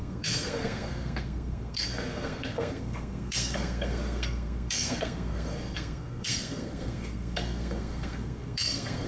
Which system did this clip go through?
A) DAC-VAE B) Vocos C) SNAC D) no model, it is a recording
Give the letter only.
C